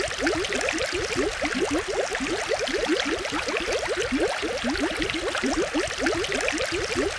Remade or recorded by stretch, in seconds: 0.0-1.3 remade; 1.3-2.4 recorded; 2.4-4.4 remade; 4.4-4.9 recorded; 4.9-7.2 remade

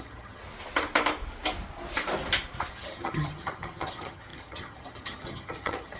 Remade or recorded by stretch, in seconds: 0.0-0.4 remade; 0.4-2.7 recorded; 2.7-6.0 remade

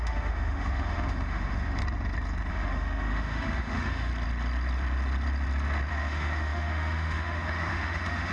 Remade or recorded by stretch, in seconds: 0.0-1.8 remade; 1.8-2.5 recorded; 2.5-4.1 remade; 4.1-5.9 recorded; 5.9-8.3 remade

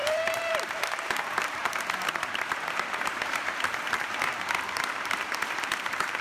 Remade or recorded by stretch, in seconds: 0.0-6.2 remade